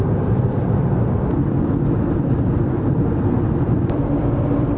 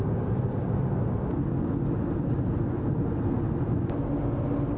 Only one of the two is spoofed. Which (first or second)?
first